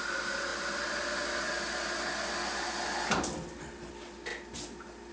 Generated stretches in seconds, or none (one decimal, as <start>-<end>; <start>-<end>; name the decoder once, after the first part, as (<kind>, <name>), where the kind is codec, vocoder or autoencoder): none